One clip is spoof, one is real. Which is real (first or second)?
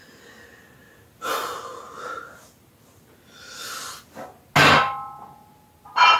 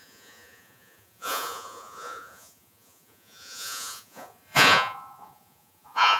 first